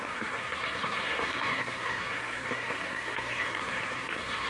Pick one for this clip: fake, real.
fake